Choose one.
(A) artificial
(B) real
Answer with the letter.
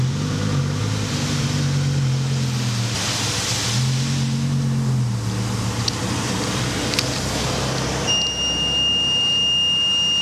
B